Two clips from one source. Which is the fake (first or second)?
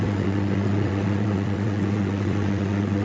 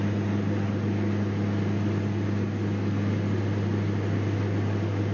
first